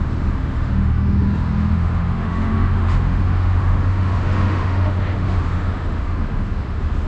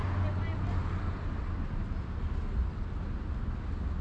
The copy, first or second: first